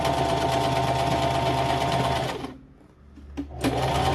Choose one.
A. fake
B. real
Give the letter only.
B